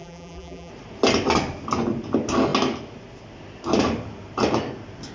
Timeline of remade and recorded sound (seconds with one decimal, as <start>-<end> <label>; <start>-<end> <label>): 0.0-0.7 remade; 0.7-5.1 recorded

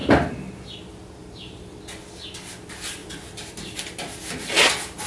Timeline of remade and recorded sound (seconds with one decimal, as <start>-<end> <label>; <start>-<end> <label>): 0.0-1.2 recorded; 1.2-1.8 remade; 1.8-3.0 recorded; 3.0-3.5 remade; 3.5-5.1 recorded

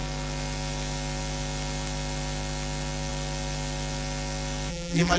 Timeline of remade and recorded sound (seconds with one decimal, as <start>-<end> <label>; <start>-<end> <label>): 0.0-4.7 recorded; 4.7-5.2 remade